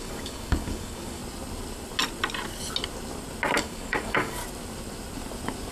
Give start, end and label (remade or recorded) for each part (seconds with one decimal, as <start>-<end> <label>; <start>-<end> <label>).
0.0-1.2 remade; 1.2-3.6 recorded; 3.6-4.4 remade; 4.4-5.7 recorded